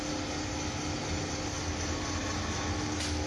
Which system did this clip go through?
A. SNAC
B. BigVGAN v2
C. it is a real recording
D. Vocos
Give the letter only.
C